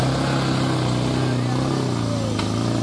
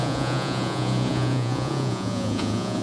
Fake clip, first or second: second